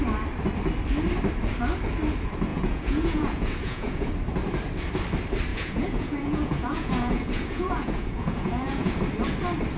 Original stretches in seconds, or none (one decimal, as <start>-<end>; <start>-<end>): 0.0-2.5; 4.1-5.5; 9.0-9.8